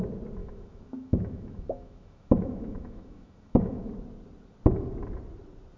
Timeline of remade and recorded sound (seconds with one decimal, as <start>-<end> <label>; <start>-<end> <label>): 0.0-0.4 recorded; 0.4-3.9 remade; 3.9-5.8 recorded